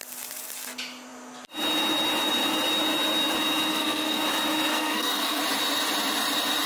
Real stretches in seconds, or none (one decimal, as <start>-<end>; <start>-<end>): 0.0-3.7; 4.2-4.7; 5.4-6.7